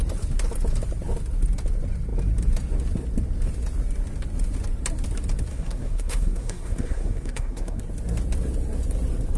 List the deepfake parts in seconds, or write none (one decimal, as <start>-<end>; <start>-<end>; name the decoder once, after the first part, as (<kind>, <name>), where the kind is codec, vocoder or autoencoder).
5.5-7.8 (codec, SNAC)